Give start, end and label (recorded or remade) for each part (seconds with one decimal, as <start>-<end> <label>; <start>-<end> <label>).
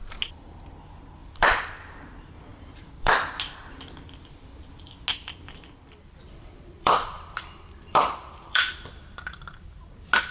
0.0-1.2 recorded; 1.2-1.7 remade; 1.7-2.5 recorded; 2.5-3.1 remade; 3.1-5.1 recorded; 5.1-8.7 remade; 8.7-10.3 recorded